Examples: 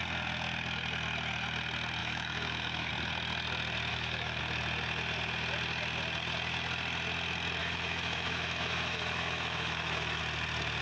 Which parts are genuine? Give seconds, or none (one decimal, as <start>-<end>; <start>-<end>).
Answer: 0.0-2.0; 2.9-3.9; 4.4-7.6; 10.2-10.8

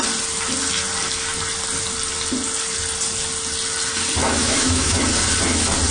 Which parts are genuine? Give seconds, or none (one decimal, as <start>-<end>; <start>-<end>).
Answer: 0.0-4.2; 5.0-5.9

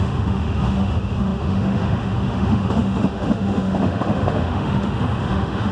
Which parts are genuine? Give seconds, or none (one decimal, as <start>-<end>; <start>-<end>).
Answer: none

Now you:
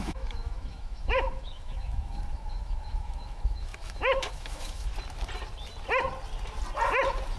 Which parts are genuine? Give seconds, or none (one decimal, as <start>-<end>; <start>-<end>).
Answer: 4.9-7.4

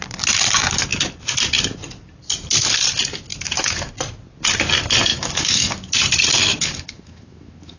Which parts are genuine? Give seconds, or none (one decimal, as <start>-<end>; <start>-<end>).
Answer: 0.0-3.3; 3.9-5.1; 5.9-6.4

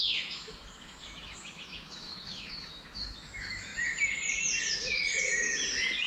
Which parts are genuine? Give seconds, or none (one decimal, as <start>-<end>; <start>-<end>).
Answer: 3.7-6.1

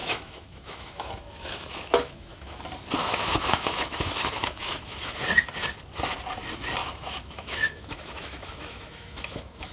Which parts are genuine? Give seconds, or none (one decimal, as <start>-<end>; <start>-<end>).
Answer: 2.6-3.0; 5.2-6.8